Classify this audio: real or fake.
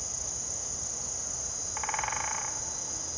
real